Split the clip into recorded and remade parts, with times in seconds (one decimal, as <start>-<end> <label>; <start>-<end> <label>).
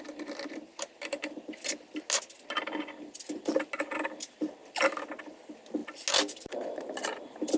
0.0-7.6 recorded